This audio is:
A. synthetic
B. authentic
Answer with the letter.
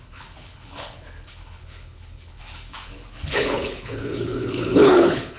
A